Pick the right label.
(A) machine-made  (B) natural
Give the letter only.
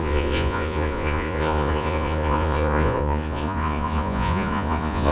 A